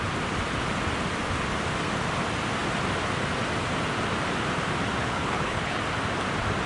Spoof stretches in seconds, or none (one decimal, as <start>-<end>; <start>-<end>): 5.0-5.8

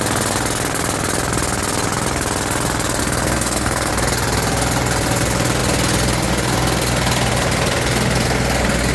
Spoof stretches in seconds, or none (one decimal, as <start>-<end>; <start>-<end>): 3.0-3.9

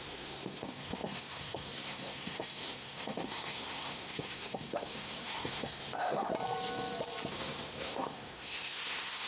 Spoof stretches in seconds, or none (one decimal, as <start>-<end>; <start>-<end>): 0.0-6.3; 7.3-9.3